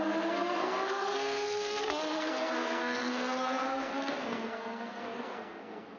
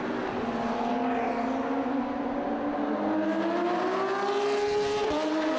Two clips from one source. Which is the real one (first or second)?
second